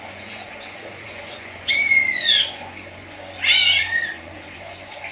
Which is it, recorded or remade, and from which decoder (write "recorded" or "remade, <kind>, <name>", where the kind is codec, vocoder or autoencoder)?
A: remade, vocoder, Vocos